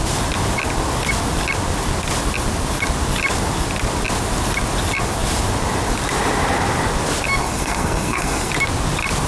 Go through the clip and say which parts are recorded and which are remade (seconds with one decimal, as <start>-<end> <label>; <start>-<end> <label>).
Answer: 0.0-7.4 recorded; 7.4-8.5 remade; 8.5-9.3 recorded